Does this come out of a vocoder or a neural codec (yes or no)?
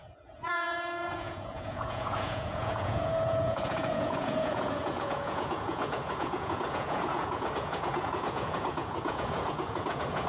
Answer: yes